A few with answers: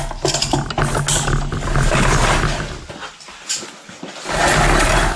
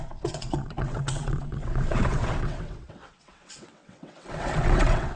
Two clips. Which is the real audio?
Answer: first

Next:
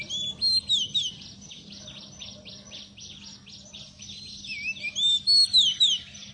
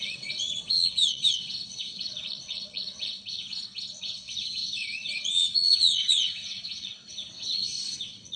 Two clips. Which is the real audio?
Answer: first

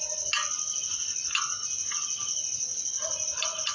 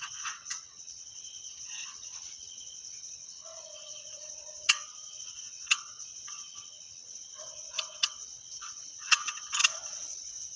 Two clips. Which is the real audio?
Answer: first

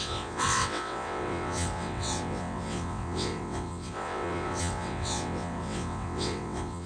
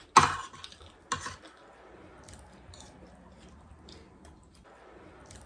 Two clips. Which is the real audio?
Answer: second